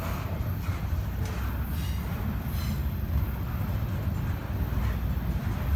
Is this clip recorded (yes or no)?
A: yes